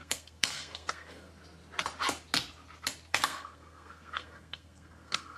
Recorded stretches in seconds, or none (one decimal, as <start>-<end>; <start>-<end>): 1.3-3.1